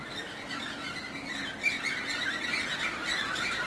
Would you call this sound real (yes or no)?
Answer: yes